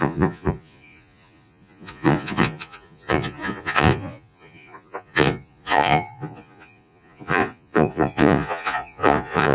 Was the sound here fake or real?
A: fake